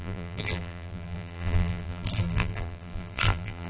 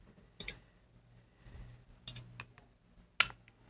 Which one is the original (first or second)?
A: second